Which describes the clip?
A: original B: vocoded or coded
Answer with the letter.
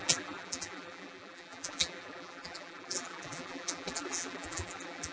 B